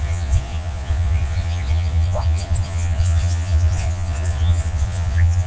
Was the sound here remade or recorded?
remade